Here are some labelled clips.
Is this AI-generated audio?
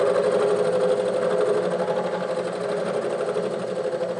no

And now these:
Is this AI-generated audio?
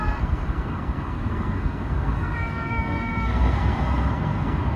yes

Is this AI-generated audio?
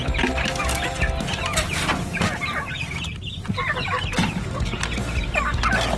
no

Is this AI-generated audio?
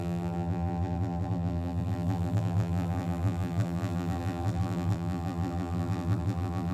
yes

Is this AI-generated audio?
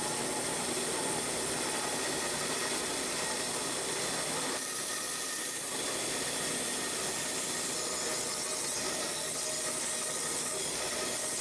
no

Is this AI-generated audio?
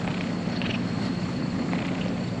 no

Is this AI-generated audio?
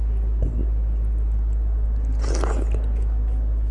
no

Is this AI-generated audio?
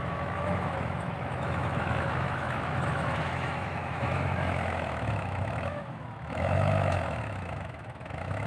yes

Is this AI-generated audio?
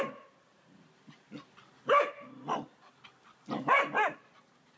no